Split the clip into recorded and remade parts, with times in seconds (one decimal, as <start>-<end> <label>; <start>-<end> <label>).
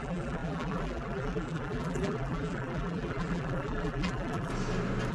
0.0-4.5 remade; 4.5-5.1 recorded